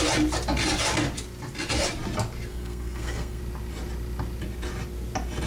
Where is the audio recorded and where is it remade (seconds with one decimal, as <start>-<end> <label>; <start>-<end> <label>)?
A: 0.0-2.5 recorded; 2.5-3.4 remade; 3.4-5.5 recorded